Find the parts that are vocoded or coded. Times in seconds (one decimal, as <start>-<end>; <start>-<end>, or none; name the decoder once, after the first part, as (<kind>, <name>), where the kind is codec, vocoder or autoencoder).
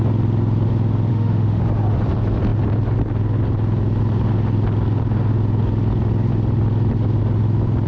1.1-1.6 (autoencoder, DAC-VAE)